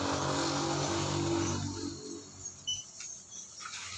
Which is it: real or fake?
real